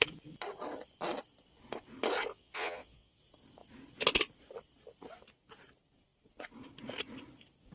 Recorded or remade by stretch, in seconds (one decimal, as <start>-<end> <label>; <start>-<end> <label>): 0.0-2.3 recorded; 2.3-3.2 remade; 3.2-7.7 recorded